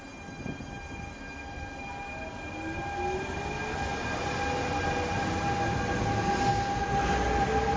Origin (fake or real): real